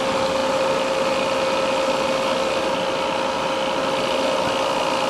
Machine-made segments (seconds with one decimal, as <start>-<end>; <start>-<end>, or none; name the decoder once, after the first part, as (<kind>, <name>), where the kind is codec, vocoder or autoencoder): none